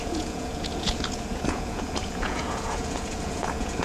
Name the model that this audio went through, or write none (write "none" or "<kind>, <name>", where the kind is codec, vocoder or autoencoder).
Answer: vocoder, Vocos